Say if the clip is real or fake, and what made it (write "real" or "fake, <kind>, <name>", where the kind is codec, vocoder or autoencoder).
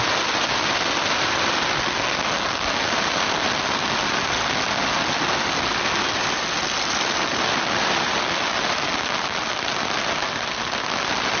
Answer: real